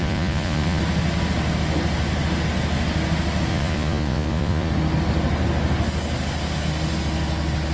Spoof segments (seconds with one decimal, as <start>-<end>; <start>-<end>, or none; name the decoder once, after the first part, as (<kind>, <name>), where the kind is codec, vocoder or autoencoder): 0.0-0.8 (vocoder, Vocos); 3.5-4.7